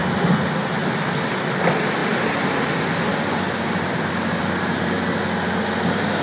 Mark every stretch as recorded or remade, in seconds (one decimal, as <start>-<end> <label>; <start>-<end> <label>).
0.0-2.0 recorded; 2.0-4.4 remade; 4.4-6.2 recorded